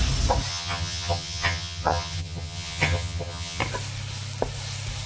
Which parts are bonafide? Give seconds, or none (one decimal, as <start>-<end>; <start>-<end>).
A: 0.0-0.5; 3.6-5.1